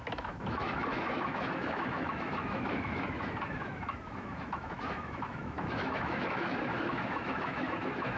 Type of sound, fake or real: fake